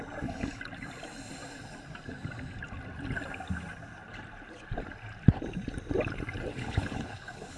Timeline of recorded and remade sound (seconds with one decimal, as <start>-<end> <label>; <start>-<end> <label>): 0.0-6.5 recorded; 6.5-7.6 remade